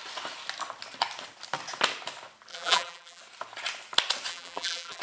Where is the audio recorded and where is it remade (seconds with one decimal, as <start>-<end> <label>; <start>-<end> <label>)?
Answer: 0.0-2.5 recorded; 2.5-3.2 remade; 3.2-4.3 recorded; 4.3-5.0 remade